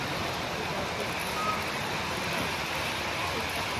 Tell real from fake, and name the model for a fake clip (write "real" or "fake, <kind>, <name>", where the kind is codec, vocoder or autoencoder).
real